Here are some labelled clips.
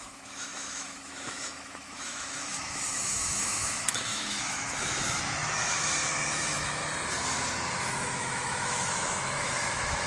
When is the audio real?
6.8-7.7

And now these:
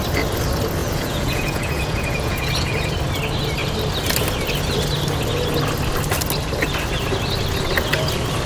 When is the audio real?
0.0-0.8; 2.9-8.5

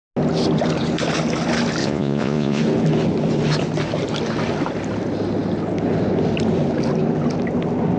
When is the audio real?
0.0-1.8; 2.6-8.0

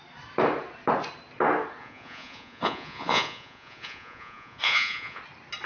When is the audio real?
0.0-1.8; 5.2-5.7

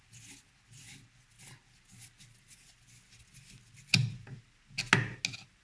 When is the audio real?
0.0-5.6

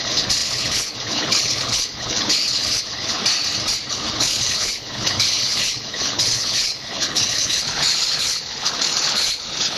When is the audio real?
3.2-3.9

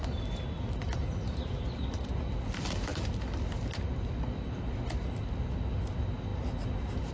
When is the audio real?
0.0-7.1

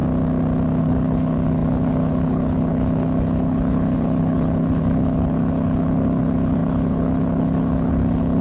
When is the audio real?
0.0-0.8